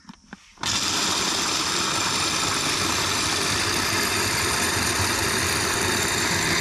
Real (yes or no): yes